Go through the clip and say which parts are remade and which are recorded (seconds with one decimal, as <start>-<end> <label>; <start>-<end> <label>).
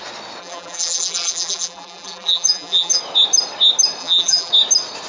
0.0-0.4 recorded; 0.4-3.0 remade; 3.0-4.0 recorded; 4.0-4.5 remade; 4.5-5.1 recorded